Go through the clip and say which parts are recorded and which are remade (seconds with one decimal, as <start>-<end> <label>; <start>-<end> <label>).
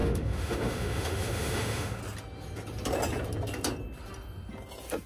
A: 0.0-2.0 remade; 2.0-5.1 recorded